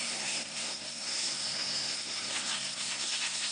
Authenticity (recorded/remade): remade